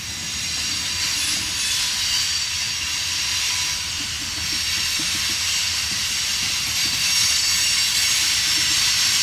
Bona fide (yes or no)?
yes